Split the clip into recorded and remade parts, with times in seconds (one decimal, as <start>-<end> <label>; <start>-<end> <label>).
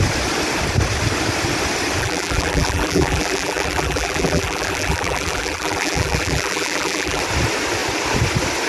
0.0-2.0 recorded; 2.0-7.2 remade; 7.2-8.7 recorded